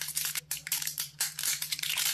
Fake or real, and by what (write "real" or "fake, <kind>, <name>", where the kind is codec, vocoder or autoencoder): fake, vocoder, BigVGAN v2